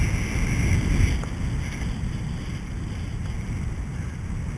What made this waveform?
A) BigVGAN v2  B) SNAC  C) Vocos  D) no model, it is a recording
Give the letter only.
D